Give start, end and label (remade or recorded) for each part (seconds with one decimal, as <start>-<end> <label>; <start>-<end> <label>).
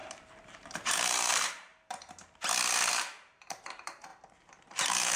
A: 0.0-1.7 remade; 1.7-2.9 recorded; 2.9-5.2 remade